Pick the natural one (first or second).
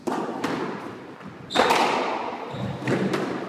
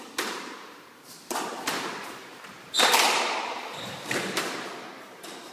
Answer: first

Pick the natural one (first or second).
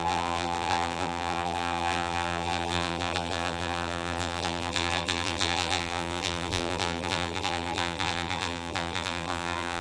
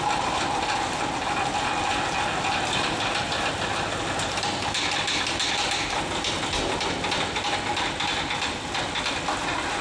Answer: second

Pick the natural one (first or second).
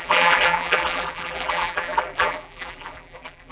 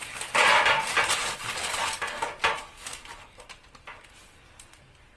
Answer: second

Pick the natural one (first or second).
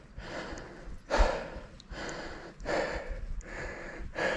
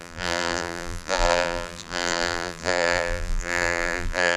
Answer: first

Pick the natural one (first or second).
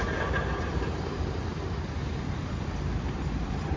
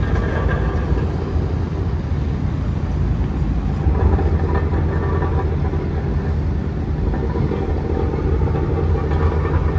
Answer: second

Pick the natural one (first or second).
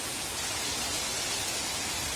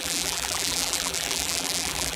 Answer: first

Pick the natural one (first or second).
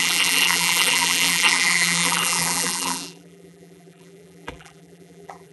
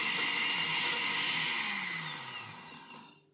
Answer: second